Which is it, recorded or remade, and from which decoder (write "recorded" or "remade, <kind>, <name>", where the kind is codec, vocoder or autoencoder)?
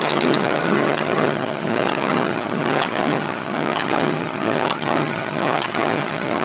remade, vocoder, HiFi-GAN